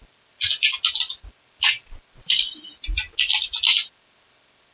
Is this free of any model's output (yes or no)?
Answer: yes